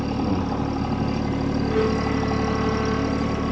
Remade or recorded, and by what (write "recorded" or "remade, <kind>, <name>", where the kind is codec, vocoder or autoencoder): recorded